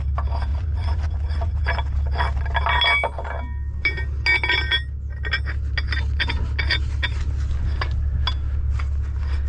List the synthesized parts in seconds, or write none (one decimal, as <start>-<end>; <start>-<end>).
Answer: 0.5-1.6